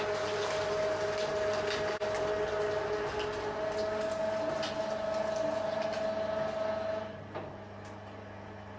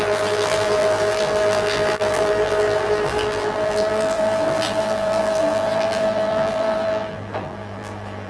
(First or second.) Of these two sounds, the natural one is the first